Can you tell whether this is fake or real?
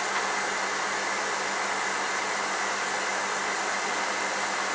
real